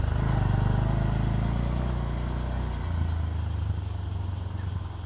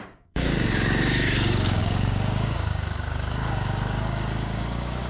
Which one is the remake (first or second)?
second